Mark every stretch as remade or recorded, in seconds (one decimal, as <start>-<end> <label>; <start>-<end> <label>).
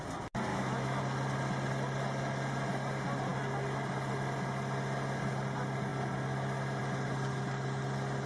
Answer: 0.0-0.5 recorded; 0.5-1.0 remade; 1.0-8.3 recorded